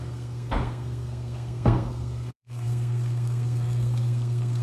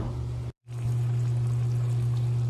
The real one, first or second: second